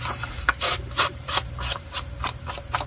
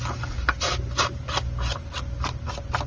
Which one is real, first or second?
second